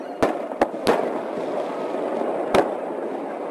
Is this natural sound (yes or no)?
yes